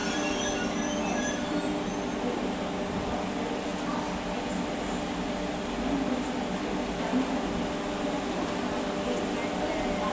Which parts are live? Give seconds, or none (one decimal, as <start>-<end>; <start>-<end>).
0.0-10.1